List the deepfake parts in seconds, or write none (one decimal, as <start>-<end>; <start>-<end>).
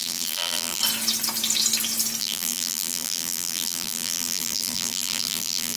0.0-0.8; 2.2-5.8